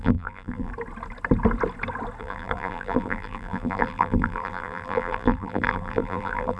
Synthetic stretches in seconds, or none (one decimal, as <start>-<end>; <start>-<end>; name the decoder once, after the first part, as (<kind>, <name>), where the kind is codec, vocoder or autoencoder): 0.0-0.7 (vocoder, BigVGAN v2); 2.2-6.6